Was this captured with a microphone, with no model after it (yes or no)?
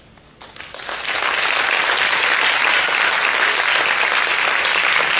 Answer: yes